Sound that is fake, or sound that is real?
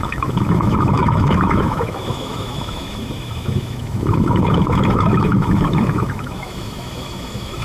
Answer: fake